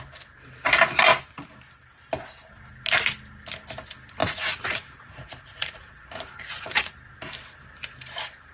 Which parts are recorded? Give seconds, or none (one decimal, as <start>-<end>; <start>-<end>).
0.0-4.2; 6.9-8.5